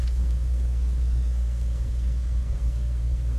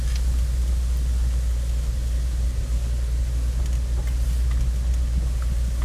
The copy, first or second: first